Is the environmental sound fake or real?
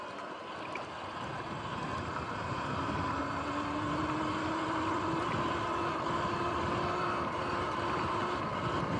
real